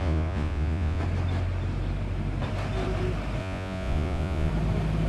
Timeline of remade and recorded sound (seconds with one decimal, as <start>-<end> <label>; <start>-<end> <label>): 0.0-1.0 remade; 1.0-3.4 recorded; 3.4-4.5 remade; 4.5-5.1 recorded